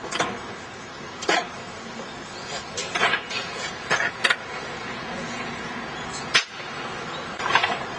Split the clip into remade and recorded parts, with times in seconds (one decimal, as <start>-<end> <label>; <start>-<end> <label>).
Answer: 0.0-2.8 recorded; 2.8-6.5 remade; 6.5-8.0 recorded